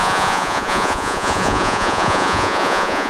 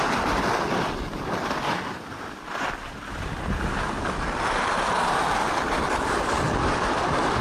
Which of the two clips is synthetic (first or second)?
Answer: first